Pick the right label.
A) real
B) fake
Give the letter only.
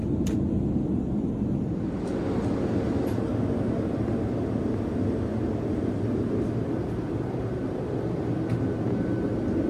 A